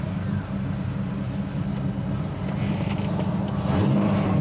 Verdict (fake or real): real